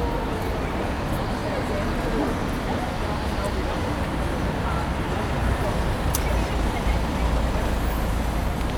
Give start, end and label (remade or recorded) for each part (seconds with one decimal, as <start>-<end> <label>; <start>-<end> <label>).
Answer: 0.0-5.4 recorded; 5.4-7.2 remade; 7.2-8.8 recorded